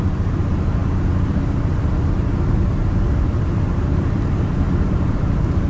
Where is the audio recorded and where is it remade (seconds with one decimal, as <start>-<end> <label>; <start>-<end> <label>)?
0.0-0.8 remade; 0.8-3.1 recorded; 3.1-5.7 remade